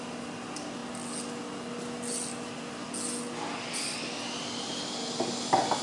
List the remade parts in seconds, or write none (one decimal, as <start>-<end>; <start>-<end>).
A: none